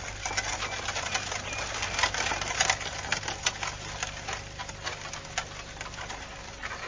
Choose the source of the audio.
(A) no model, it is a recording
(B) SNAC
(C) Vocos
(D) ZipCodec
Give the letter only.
A